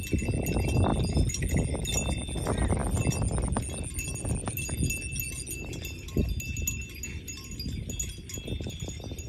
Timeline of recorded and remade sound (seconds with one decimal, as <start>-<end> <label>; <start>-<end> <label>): 0.0-9.3 recorded